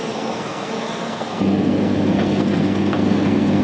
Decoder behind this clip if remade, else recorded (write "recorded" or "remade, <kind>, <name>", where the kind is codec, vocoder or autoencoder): remade, codec, SNAC